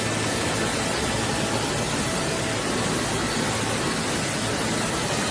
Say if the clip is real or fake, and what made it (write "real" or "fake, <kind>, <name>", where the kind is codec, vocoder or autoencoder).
real